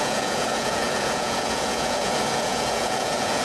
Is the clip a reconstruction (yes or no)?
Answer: yes